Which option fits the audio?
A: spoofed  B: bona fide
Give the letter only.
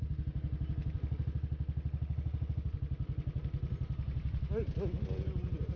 B